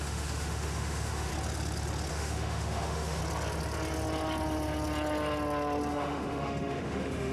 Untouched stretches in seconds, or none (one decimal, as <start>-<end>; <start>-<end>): 1.3-2.1; 3.2-5.9